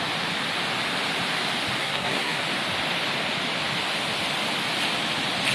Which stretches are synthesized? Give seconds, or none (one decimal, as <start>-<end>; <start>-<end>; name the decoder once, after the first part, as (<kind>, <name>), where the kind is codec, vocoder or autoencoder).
1.8-2.4 (codec, SNAC)

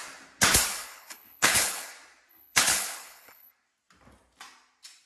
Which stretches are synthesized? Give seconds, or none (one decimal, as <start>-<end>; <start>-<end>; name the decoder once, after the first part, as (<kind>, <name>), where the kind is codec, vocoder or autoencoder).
0.7-1.9 (codec, HILCodec); 2.3-3.5

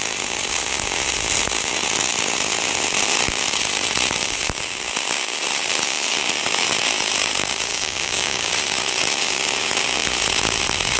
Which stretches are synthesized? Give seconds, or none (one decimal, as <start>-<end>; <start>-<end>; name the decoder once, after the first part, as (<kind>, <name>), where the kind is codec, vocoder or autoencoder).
7.7-8.5 (codec, DAC)

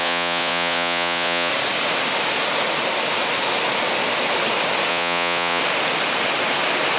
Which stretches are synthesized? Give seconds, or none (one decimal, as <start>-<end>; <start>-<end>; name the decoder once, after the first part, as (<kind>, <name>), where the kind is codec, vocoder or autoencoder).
0.0-1.5 (vocoder, Vocos); 4.9-5.6

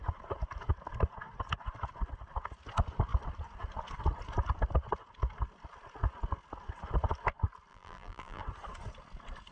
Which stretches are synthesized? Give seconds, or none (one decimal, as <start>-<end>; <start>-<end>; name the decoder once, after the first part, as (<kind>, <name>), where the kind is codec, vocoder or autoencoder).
7.7-8.4 (vocoder, BigVGAN v2)

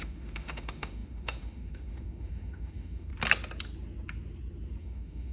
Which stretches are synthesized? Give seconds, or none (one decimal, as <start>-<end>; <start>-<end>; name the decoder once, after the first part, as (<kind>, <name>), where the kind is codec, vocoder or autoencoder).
0.0-3.1 (autoencoder, DAC-VAE); 4.8-5.3

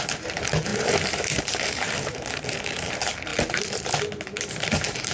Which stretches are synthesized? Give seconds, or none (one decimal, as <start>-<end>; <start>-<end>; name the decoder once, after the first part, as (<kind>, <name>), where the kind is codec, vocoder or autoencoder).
0.0-3.3 (vocoder, BigVGAN v2); 4.5-5.1

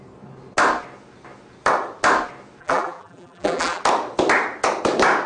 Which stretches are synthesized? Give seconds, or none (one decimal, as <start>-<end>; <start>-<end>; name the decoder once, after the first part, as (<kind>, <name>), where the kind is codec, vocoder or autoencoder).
2.6-3.8 (vocoder, BigVGAN v2)